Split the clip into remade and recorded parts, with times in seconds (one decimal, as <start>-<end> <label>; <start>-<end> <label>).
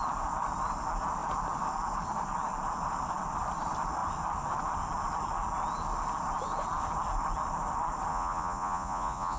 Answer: 0.0-8.1 recorded; 8.1-9.4 remade